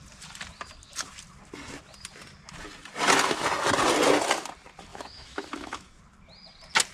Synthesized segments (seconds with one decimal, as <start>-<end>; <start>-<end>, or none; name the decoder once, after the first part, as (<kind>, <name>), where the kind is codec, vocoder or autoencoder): 4.9-6.0 (autoencoder, DAC-VAE)